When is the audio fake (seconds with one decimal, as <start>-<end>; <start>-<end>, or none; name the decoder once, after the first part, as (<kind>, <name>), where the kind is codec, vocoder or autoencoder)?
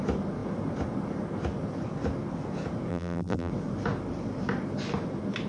2.9-3.5 (vocoder, BigVGAN v2)